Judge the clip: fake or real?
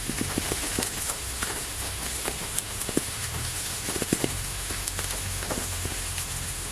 fake